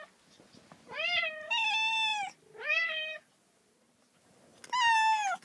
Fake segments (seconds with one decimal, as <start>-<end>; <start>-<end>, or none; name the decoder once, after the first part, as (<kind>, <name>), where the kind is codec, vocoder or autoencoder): 2.1-3.3 (vocoder, BigVGAN v2)